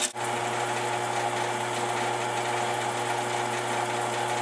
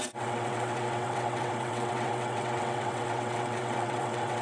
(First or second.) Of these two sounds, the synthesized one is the second